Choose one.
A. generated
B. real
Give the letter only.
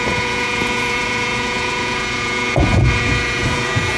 A